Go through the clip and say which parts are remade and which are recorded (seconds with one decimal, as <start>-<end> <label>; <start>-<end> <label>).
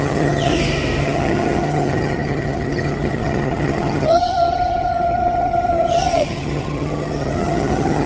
0.0-0.5 remade; 0.5-1.0 recorded; 1.0-8.1 remade